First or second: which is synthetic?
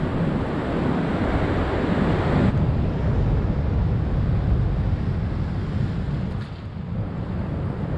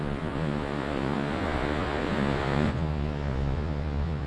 second